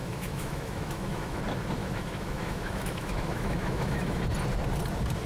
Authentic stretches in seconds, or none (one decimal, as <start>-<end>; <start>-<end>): 1.4-1.8; 4.2-5.3